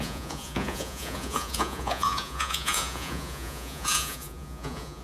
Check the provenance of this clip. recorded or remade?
remade